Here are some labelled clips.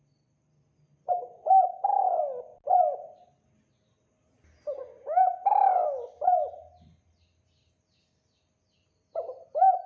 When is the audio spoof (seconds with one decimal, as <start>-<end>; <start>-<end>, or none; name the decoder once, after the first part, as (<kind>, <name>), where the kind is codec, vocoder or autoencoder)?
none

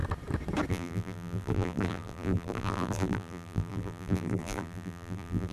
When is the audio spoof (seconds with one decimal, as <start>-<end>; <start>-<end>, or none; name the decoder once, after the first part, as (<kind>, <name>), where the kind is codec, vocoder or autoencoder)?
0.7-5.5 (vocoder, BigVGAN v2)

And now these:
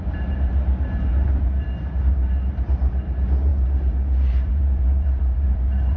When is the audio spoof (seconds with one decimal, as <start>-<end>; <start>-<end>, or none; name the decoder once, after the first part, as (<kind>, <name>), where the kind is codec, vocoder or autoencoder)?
0.0-6.0 (vocoder, BigVGAN v2)

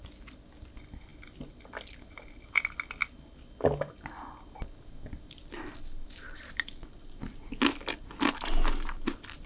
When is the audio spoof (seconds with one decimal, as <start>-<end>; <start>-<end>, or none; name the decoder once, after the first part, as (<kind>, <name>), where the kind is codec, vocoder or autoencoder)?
none

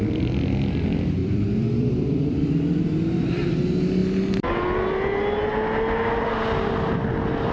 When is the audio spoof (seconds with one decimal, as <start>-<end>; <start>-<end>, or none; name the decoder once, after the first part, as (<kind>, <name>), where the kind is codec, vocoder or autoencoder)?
1.2-3.6 (vocoder, BigVGAN v2)

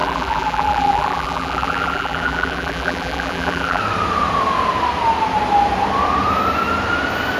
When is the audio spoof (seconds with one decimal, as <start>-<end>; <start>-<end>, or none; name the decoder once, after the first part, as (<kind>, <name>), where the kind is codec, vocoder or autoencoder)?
0.0-3.8 (vocoder, BigVGAN v2)

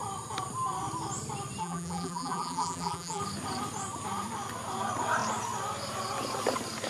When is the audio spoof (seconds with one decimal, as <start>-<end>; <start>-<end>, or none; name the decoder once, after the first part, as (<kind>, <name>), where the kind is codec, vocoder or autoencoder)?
1.6-3.2 (vocoder, BigVGAN v2)

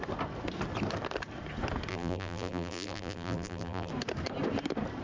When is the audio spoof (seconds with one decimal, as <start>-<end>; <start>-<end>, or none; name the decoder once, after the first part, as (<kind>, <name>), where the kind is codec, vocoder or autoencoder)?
1.9-3.9 (vocoder, BigVGAN v2)